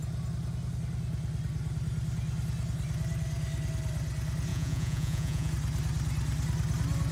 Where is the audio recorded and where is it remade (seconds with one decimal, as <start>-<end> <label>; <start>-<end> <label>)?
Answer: 0.0-4.5 recorded; 4.5-5.5 remade; 5.5-7.1 recorded